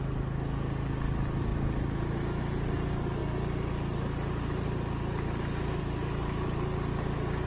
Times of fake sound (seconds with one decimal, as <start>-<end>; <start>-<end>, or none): none